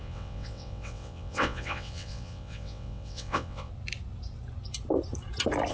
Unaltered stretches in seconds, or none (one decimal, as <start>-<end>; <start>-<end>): 3.7-5.7